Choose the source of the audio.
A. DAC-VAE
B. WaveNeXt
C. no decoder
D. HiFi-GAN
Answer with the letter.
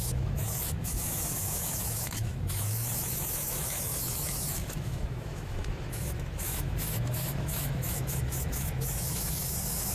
A